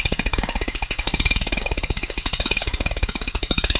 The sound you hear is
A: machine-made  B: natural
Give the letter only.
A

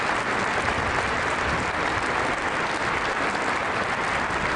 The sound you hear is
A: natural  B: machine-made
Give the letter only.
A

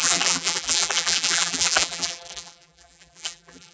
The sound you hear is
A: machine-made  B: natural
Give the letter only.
A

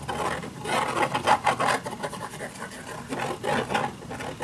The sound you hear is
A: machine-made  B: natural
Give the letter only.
B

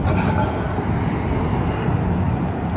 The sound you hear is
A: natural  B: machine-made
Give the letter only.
A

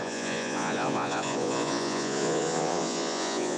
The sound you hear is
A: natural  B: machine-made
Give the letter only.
B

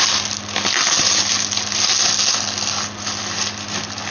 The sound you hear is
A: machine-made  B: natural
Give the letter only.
B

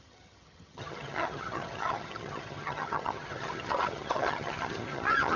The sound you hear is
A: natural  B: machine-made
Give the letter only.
B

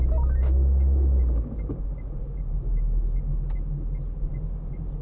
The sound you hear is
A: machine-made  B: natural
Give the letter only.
B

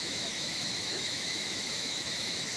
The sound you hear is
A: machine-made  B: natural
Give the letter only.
A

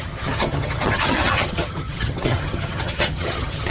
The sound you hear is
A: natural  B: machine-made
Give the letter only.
B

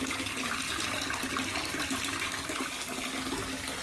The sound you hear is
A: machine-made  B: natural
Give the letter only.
B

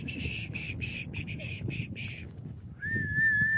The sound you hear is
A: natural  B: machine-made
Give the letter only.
B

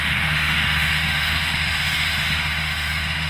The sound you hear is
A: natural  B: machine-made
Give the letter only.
B